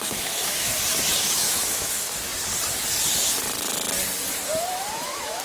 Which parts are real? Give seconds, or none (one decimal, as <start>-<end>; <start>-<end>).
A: 0.7-1.2; 2.3-4.6